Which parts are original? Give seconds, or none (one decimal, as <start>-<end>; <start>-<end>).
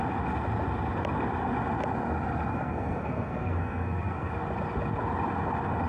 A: 0.0-2.5; 4.3-5.9